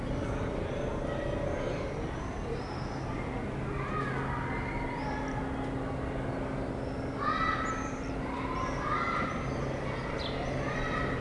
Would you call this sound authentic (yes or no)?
yes